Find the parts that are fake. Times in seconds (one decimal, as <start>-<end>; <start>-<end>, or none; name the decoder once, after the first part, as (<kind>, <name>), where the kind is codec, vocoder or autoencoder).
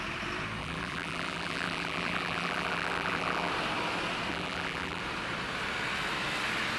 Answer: 0.6-3.5 (vocoder, BigVGAN v2); 4.3-5.0